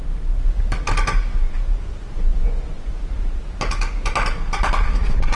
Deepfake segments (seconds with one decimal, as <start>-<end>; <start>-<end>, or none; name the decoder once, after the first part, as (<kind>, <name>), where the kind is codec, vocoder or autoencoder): 2.3-2.9 (vocoder, Vocos)